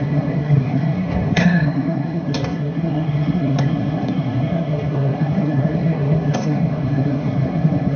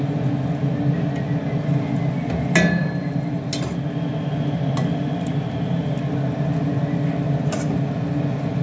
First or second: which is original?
second